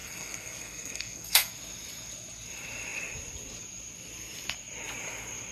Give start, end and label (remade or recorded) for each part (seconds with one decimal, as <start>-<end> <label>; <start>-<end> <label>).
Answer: 0.0-1.5 remade; 1.5-5.5 recorded